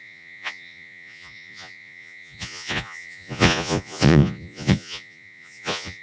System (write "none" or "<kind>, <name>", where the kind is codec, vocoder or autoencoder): vocoder, Vocos